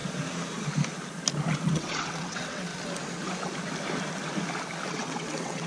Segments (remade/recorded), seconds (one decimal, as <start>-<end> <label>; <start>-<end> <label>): 0.0-1.6 recorded; 1.6-2.7 remade; 2.7-4.9 recorded; 4.9-5.7 remade